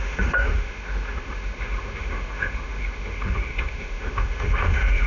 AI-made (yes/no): yes